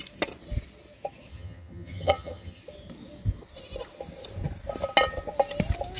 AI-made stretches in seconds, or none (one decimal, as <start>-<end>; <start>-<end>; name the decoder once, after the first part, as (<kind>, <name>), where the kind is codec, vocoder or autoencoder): 1.3-2.6 (vocoder, HiFi-GAN)